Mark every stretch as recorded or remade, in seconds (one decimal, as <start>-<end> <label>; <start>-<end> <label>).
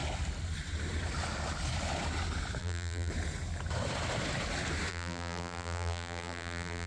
0.0-2.6 recorded; 2.6-3.1 remade; 3.1-4.9 recorded; 4.9-6.9 remade